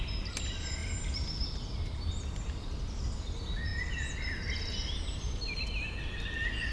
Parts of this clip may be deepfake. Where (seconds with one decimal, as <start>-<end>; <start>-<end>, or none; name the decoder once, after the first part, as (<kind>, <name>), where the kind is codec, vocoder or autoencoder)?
none